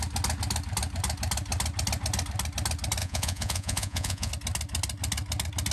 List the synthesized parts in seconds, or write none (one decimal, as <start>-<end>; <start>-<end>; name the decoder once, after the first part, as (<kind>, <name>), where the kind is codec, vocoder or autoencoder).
3.0-4.3 (vocoder, Vocos)